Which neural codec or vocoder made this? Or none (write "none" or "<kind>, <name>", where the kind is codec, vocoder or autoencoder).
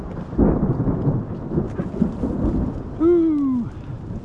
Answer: none